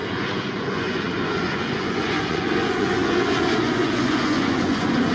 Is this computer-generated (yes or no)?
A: yes